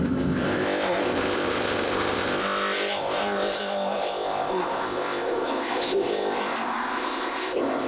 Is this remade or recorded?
remade